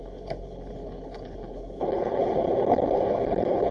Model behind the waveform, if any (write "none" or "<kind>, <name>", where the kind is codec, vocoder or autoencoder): codec, HILCodec